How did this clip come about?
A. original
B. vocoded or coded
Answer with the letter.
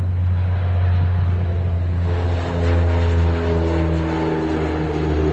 A